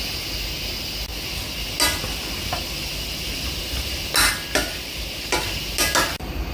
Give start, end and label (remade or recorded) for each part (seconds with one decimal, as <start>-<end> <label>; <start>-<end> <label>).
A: 0.0-6.5 recorded